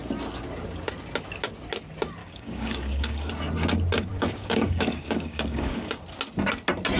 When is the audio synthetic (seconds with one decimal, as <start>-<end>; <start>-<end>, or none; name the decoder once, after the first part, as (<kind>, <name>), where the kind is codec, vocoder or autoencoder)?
2.2-3.3 (codec, DAC); 4.1-6.0